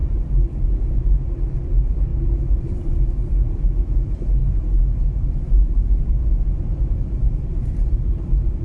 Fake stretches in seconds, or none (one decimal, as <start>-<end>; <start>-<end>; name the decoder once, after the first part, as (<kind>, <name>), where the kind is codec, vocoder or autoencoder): 0.0-4.4 (vocoder, BigVGAN v2); 5.3-8.6